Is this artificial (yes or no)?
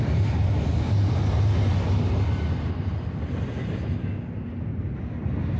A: no